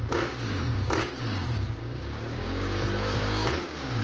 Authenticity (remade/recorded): remade